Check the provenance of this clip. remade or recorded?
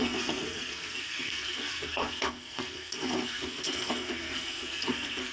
remade